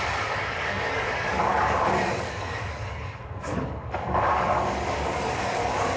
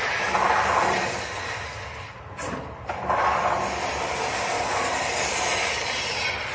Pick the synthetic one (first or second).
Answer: first